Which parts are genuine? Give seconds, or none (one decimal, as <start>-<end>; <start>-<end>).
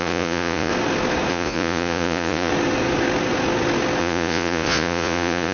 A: 0.7-1.3; 2.5-4.0